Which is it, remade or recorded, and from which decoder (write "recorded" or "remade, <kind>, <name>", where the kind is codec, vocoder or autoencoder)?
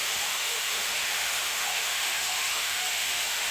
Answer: remade, autoencoder, DAC-VAE